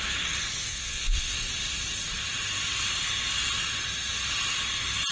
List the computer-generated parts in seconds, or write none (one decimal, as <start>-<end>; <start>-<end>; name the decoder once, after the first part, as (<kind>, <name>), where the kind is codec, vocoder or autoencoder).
0.7-1.3 (vocoder, WaveNeXt)